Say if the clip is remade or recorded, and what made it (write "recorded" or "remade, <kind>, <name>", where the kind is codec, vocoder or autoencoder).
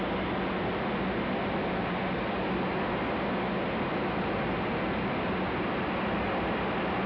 recorded